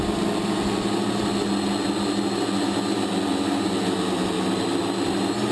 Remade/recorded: recorded